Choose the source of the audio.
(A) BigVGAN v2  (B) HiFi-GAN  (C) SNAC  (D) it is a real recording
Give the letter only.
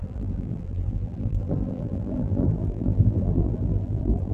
A